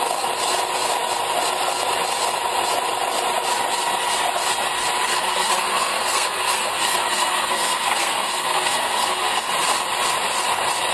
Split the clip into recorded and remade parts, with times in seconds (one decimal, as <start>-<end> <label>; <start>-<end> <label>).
0.0-5.1 recorded; 5.1-9.5 remade; 9.5-10.9 recorded